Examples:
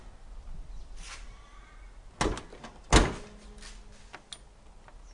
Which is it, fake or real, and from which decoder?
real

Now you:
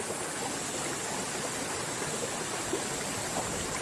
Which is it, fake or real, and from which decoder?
real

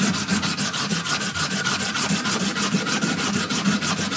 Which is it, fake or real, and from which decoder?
real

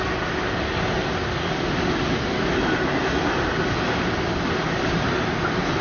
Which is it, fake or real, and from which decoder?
real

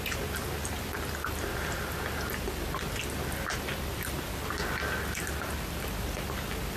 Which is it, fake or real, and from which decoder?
real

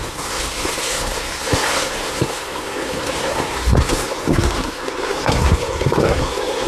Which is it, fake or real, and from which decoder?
fake, codec, SNAC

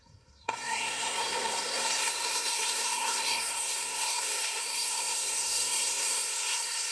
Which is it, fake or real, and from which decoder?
fake, codec, SNAC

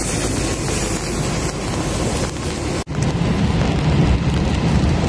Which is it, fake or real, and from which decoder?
real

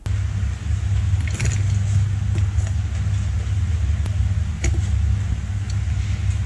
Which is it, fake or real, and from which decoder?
real